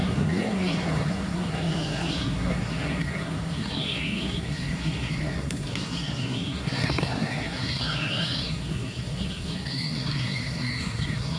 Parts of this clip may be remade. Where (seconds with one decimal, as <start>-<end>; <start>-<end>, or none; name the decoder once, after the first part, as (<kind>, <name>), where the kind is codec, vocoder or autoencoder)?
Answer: 0.0-11.4 (codec, SNAC)